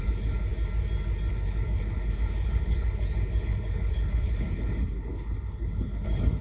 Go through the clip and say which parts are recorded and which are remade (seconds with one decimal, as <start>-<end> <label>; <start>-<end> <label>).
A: 0.0-0.5 remade; 0.5-1.3 recorded; 1.3-6.4 remade